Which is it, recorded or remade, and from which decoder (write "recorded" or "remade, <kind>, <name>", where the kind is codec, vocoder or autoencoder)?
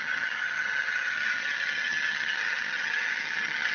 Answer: remade, vocoder, HiFi-GAN